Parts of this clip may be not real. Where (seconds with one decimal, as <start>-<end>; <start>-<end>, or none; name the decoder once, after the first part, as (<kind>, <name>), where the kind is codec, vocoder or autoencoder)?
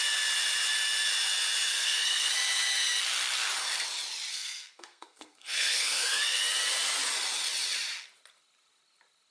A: 1.7-2.3 (codec, SNAC); 4.3-6.4